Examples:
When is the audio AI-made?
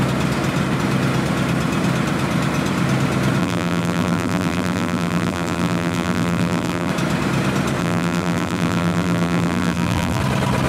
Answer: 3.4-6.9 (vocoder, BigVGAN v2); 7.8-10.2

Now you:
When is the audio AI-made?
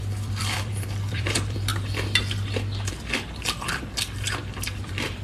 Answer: 0.0-1.7 (vocoder, BigVGAN v2); 4.8-5.2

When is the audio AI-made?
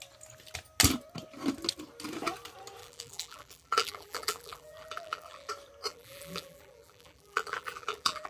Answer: 2.8-5.5 (vocoder, BigVGAN v2); 5.9-8.3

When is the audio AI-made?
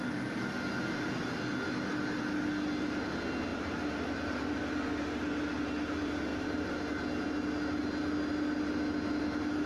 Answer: none